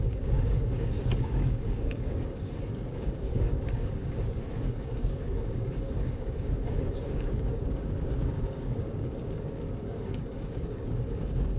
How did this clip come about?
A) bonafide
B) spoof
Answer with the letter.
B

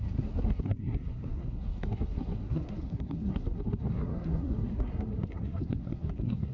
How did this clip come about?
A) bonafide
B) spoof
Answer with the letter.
B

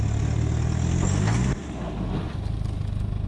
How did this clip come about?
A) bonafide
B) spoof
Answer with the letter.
A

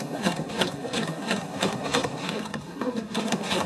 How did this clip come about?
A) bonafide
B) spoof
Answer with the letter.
B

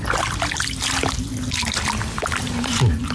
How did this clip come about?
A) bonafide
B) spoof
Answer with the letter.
A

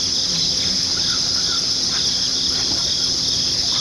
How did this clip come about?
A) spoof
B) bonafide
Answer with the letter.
B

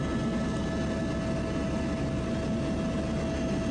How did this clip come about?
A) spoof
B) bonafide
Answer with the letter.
B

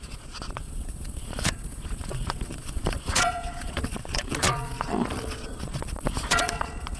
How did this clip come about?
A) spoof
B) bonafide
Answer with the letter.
A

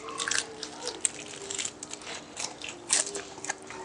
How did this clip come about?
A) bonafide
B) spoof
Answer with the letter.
B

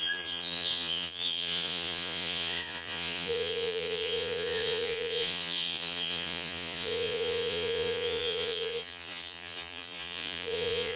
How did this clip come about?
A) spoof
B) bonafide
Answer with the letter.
A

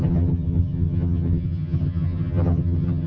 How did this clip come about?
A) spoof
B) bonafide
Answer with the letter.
A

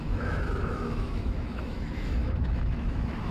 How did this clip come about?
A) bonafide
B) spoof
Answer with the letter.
B